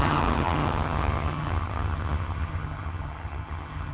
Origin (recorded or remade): remade